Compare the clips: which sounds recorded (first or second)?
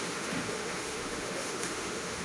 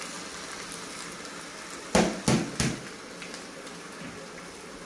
second